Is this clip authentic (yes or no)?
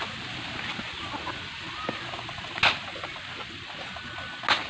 yes